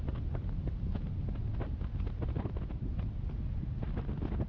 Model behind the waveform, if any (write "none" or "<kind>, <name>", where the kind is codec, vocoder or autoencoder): none